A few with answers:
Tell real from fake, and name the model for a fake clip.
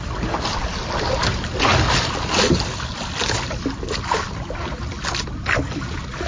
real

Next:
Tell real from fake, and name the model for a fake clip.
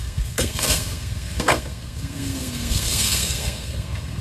fake, codec, SNAC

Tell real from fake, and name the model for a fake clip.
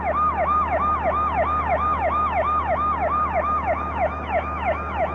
fake, autoencoder, DAC-VAE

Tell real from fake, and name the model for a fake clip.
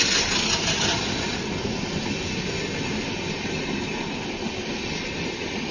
real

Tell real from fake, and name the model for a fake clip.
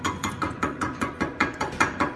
fake, vocoder, Vocos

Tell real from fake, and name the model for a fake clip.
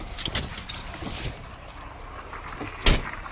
real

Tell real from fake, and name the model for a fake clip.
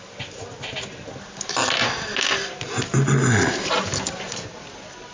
real